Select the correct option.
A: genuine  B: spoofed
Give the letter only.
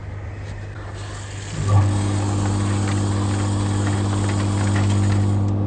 A